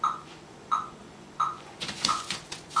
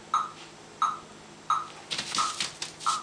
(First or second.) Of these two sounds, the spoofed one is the first